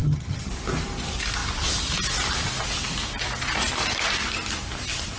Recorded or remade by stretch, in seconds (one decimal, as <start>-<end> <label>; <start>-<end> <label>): 0.0-0.5 remade; 0.5-5.2 recorded